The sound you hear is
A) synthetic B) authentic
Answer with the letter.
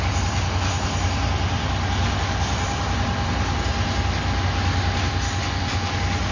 B